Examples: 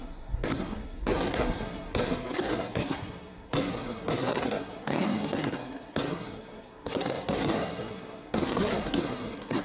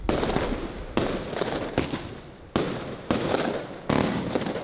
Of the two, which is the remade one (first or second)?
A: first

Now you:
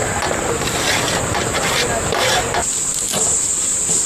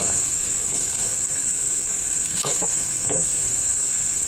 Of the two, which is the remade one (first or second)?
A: second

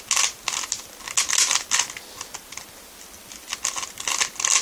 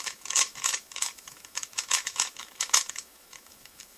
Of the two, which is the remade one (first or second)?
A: second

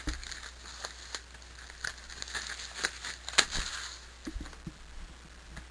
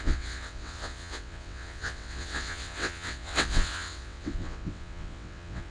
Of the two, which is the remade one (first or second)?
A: second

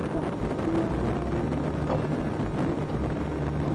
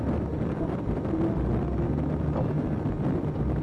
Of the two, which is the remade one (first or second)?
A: second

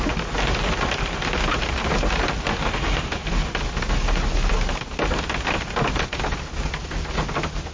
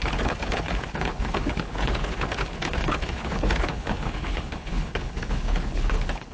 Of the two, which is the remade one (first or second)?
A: second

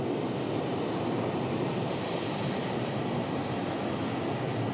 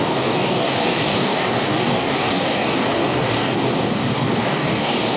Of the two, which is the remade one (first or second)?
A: second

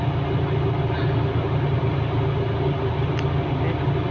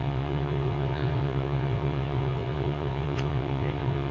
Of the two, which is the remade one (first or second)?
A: second